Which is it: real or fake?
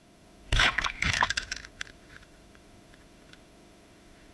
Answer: fake